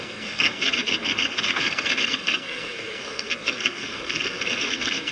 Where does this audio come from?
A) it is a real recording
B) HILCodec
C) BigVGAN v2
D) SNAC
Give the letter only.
D